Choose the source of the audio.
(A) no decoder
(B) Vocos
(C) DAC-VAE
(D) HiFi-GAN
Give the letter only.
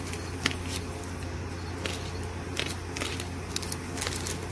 A